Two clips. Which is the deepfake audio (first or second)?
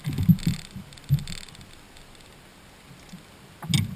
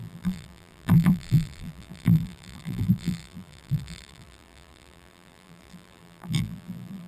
second